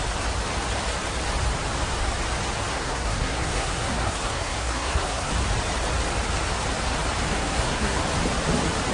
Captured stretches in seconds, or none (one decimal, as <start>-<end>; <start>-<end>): 0.0-2.7; 5.3-7.3; 8.0-8.9